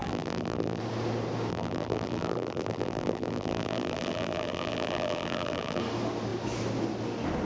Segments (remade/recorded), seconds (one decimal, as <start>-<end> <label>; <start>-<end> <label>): 0.0-0.8 remade; 0.8-1.5 recorded; 1.5-5.8 remade; 5.8-7.4 recorded